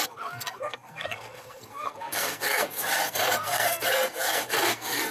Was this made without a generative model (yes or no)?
no